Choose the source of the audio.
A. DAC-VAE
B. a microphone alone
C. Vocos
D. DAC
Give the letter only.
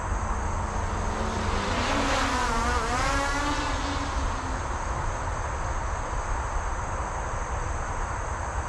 B